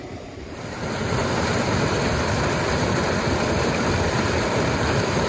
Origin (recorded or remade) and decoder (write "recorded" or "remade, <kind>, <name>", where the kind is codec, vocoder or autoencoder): remade, vocoder, BigVGAN v2